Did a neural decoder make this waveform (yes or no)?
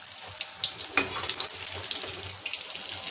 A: no